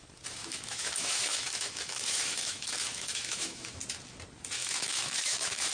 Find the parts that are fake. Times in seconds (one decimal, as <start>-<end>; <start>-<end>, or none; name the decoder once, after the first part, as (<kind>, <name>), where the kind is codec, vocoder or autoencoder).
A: 0.4-3.8 (autoencoder, DAC-VAE); 4.6-5.7